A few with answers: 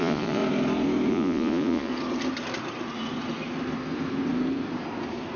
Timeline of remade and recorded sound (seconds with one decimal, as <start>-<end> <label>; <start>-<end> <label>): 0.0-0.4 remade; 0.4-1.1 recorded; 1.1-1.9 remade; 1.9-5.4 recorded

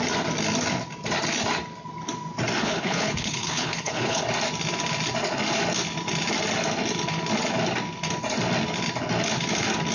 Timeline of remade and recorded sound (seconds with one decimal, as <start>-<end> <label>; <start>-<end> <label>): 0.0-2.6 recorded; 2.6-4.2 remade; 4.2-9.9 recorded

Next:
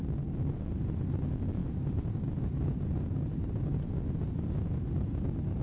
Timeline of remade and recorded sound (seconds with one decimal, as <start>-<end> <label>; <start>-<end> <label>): 0.0-1.6 recorded; 1.6-4.5 remade; 4.5-5.6 recorded